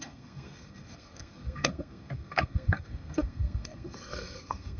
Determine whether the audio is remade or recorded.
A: remade